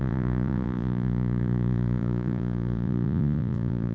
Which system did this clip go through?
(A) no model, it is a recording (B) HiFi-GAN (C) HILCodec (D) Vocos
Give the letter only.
D